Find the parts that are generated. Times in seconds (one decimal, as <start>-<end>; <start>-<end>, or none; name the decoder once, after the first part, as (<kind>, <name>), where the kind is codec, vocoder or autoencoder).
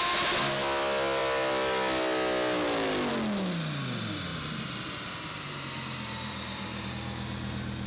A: 4.3-6.9 (vocoder, BigVGAN v2)